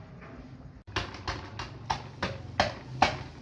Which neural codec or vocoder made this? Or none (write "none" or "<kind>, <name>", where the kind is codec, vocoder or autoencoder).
none